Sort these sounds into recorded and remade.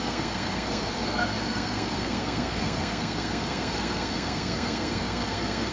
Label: remade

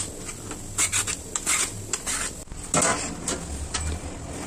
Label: recorded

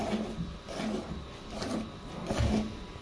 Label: recorded